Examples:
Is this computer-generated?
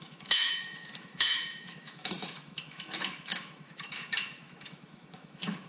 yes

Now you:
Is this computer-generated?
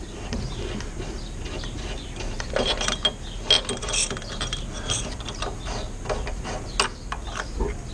no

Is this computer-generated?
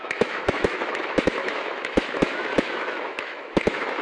yes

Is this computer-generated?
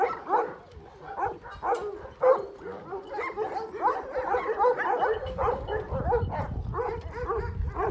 no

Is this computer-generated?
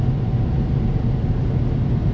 no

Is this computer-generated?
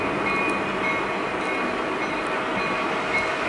no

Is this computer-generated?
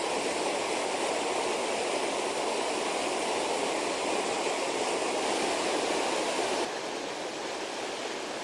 no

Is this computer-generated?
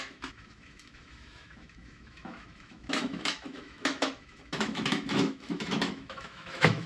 yes